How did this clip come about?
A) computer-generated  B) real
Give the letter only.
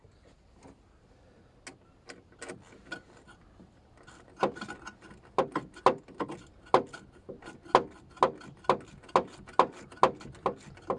B